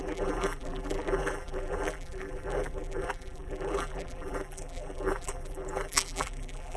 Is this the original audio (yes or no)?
no